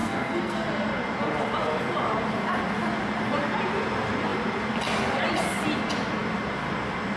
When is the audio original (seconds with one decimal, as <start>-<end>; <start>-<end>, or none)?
0.7-7.2